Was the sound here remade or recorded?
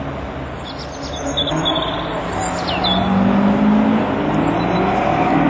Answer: recorded